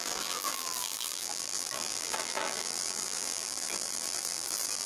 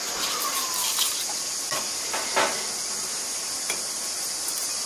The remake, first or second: first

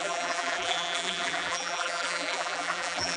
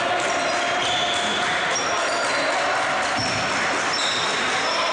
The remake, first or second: first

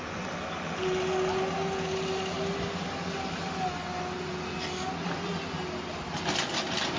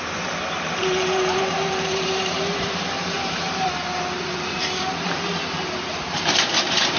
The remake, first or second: second